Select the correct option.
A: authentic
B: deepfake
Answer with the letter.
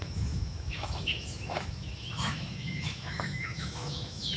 B